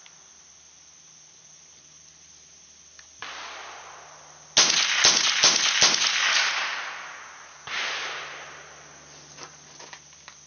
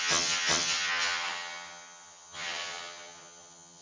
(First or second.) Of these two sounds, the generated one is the second